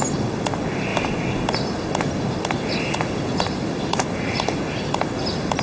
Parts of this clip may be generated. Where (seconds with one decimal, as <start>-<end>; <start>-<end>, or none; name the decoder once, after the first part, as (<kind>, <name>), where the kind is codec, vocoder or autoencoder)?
none

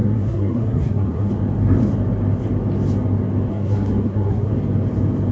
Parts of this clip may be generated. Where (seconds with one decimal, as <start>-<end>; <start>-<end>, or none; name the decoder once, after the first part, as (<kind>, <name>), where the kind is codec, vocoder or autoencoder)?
0.0-1.3 (codec, SNAC); 3.5-4.5

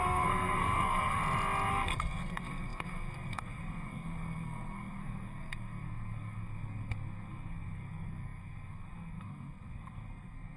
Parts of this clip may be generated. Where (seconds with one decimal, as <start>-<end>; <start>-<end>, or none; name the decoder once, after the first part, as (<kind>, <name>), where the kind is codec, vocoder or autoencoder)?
0.0-1.2 (codec, SNAC); 1.7-10.6

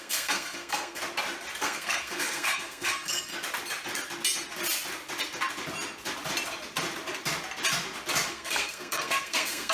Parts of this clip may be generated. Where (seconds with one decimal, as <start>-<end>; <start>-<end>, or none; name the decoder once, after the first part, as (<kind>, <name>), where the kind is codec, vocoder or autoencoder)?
0.0-1.0 (codec, SNAC); 1.6-3.3; 8.3-9.7